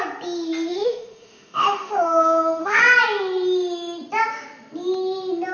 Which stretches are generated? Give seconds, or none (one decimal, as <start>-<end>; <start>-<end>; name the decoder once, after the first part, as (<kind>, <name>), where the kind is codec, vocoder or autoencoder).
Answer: 0.7-2.8 (autoencoder, DAC-VAE)

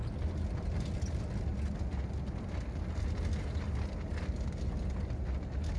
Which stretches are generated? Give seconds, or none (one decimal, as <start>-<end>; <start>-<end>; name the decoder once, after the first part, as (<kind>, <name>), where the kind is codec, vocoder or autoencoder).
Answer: none

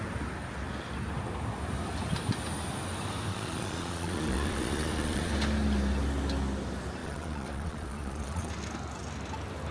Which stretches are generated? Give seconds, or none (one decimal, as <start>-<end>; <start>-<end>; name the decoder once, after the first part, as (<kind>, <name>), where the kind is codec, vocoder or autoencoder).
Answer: 3.3-5.3 (vocoder, Vocos); 7.0-8.5

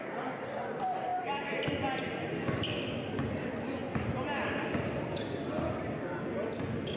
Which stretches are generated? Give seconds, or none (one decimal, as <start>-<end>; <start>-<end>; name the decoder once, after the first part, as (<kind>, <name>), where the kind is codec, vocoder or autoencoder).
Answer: none

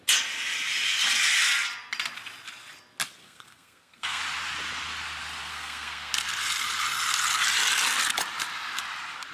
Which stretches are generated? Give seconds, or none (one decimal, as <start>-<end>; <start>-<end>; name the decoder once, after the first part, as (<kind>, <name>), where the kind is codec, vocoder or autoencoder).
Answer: 3.2-4.2 (codec, SNAC); 5.5-6.1

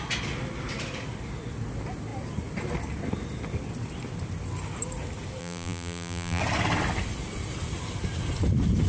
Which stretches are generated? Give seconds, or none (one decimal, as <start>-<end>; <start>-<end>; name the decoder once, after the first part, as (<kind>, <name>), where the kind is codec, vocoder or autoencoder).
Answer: 5.4-6.4 (vocoder, BigVGAN v2)

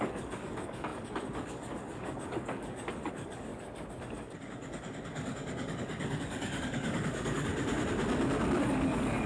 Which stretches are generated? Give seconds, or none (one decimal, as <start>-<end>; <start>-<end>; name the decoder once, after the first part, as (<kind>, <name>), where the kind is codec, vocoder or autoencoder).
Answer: 0.0-3.5 (codec, DAC); 4.0-7.5; 8.6-9.3

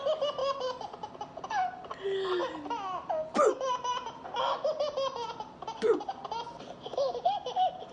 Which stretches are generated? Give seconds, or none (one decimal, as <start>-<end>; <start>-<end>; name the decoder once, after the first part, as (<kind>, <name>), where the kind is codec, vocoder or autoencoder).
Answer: none